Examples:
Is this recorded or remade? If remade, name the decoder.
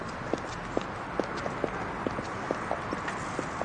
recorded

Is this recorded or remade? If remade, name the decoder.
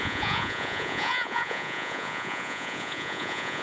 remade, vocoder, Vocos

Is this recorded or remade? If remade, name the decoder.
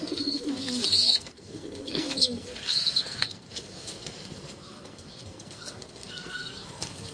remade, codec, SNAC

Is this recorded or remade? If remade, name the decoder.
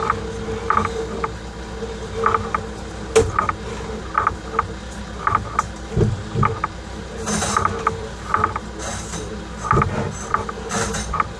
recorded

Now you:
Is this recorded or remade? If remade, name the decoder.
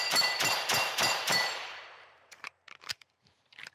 remade, vocoder, BigVGAN v2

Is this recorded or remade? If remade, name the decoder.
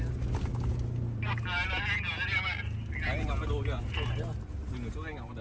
recorded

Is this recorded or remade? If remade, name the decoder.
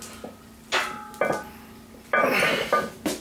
recorded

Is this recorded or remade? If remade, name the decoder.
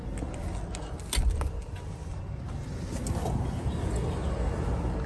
recorded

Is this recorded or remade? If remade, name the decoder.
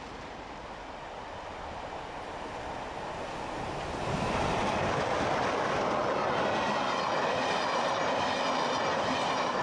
recorded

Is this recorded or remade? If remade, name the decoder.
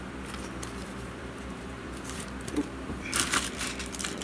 remade, vocoder, BigVGAN v2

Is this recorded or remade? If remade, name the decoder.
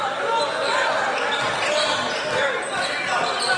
recorded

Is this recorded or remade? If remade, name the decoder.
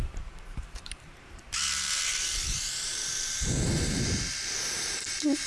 remade, vocoder, BigVGAN v2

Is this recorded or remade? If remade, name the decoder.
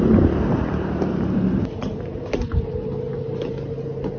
recorded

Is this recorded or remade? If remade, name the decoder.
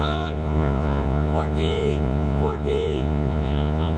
remade, vocoder, Vocos